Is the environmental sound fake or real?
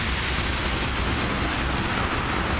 real